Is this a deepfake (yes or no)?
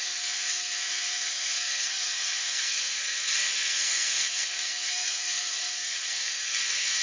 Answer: yes